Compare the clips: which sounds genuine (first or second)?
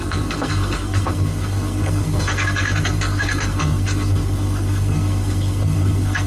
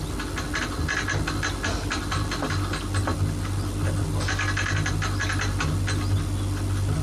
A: second